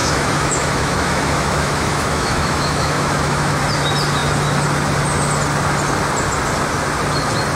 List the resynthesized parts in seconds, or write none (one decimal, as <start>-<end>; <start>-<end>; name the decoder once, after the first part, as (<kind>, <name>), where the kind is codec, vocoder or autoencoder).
0.0-3.6 (autoencoder, DAC-VAE)